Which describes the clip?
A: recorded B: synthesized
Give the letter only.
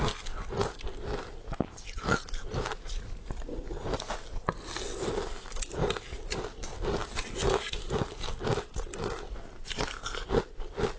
A